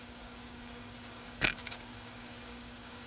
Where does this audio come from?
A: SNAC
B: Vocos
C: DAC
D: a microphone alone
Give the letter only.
C